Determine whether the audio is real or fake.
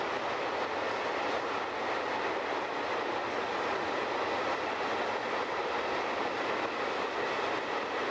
real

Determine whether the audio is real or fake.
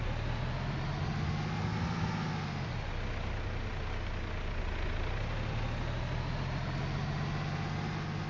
real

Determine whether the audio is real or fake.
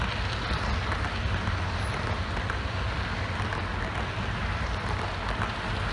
real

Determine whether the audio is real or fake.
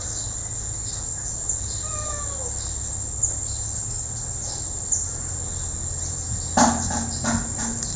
real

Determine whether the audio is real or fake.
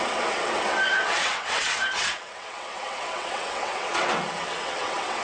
fake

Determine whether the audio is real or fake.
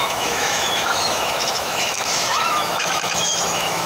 fake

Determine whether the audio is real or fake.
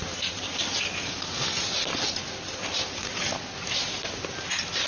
real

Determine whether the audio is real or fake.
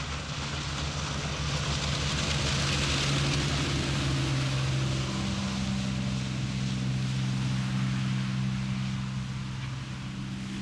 real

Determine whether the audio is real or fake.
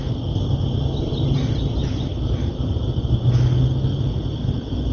real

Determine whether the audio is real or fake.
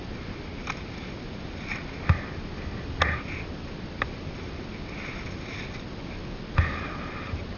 real